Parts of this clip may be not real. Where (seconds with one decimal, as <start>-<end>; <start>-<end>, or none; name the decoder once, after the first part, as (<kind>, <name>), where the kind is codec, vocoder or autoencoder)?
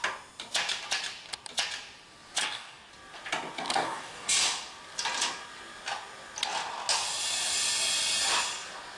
2.4-2.9 (codec, DAC); 3.7-4.3